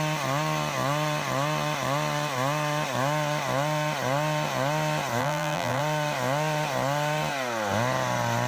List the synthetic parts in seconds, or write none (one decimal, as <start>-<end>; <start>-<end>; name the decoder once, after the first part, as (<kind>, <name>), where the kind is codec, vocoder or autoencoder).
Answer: 5.2-5.8 (vocoder, BigVGAN v2)